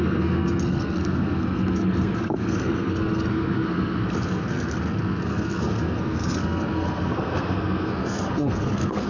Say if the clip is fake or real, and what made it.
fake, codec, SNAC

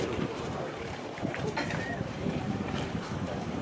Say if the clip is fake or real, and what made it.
fake, vocoder, BigVGAN v2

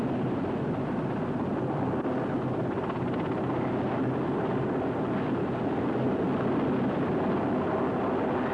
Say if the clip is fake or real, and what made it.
real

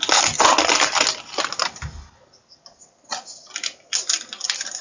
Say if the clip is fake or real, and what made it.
real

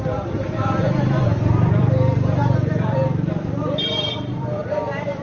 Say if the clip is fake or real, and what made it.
fake, vocoder, BigVGAN v2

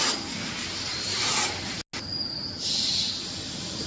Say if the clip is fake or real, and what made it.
real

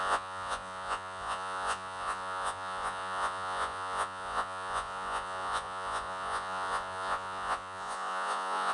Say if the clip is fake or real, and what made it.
fake, vocoder, Vocos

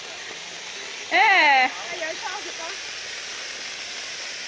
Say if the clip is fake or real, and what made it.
real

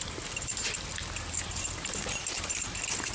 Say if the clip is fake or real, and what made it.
real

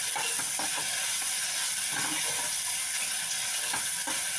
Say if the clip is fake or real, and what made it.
real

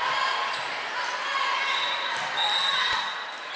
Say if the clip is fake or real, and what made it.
real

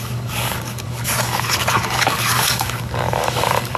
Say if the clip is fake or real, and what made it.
fake, codec, DAC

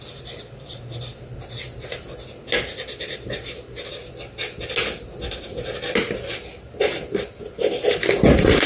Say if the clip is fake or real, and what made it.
real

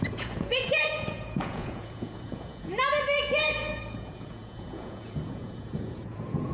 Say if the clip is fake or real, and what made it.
fake, vocoder, Vocos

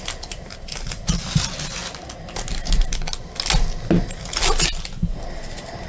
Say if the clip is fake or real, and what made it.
real